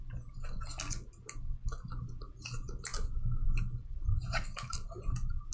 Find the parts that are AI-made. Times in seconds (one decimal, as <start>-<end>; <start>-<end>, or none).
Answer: none